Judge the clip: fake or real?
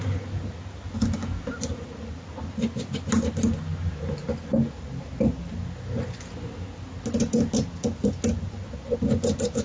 real